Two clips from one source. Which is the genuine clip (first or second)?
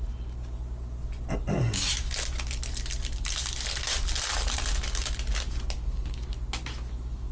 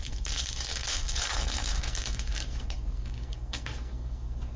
first